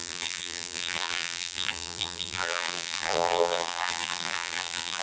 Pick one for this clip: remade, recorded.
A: remade